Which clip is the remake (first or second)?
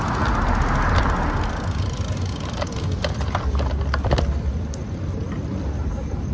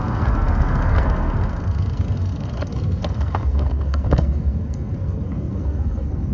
second